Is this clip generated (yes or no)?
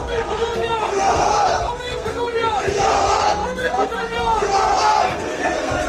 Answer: yes